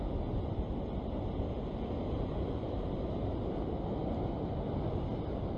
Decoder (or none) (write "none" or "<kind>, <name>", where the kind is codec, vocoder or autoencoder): none